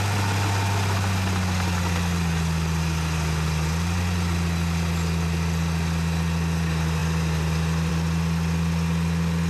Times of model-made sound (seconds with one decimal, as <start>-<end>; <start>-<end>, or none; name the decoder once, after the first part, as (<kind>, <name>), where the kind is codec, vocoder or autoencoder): none